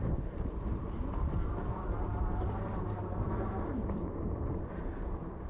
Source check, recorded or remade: remade